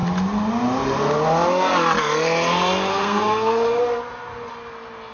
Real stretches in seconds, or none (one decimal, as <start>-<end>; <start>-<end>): 0.0-2.9; 3.8-5.1